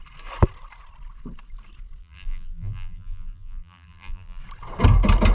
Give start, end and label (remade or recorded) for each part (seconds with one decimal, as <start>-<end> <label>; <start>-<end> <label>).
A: 0.0-2.0 recorded; 2.0-4.4 remade; 4.4-5.3 recorded